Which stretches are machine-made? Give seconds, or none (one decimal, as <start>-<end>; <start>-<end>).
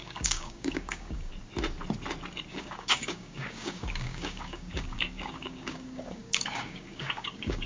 0.0-1.3; 2.5-7.7